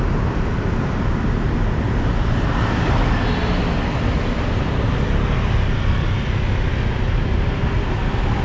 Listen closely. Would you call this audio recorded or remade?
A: recorded